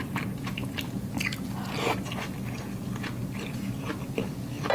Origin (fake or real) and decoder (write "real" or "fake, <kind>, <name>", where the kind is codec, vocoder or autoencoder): real